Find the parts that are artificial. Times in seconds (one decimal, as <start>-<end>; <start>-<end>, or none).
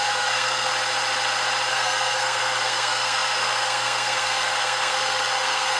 0.0-0.7; 1.7-5.8